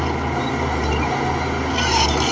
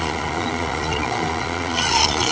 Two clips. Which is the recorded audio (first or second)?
first